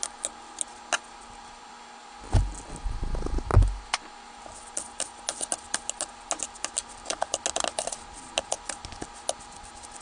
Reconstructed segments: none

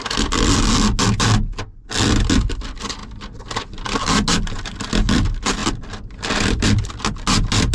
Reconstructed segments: none

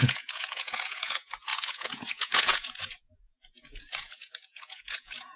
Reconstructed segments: 0.0-5.4 (vocoder, Vocos)

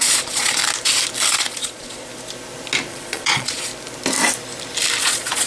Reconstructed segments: 0.0-0.6 (vocoder, Vocos); 1.3-2.1; 2.9-3.7; 5.0-5.5

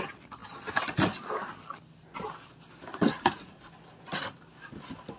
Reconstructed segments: 2.9-3.6 (vocoder, Vocos)

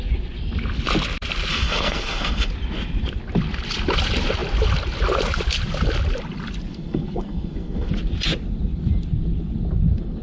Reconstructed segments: 1.5-2.5 (codec, SNAC); 6.7-7.9